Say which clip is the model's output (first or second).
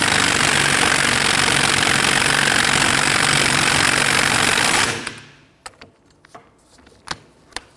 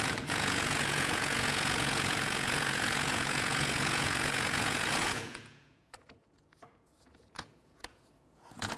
second